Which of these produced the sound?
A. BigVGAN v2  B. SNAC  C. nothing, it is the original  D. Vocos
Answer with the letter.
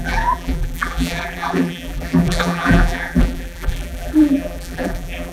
A